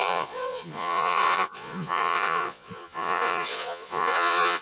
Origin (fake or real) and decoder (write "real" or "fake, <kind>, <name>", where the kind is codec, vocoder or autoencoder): fake, vocoder, Vocos